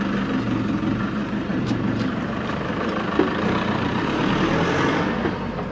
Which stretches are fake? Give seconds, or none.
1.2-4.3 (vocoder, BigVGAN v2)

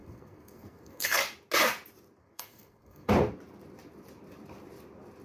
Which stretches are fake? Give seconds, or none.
0.0-1.2 (codec, SNAC); 2.2-3.1

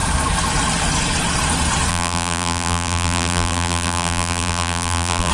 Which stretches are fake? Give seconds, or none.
1.9-5.3 (vocoder, BigVGAN v2)